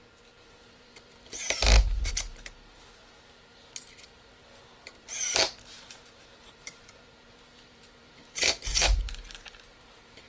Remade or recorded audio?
remade